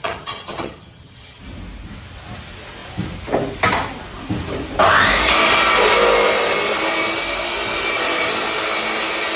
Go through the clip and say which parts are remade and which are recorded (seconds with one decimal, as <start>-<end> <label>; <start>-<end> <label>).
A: 0.0-1.4 remade; 1.4-9.4 recorded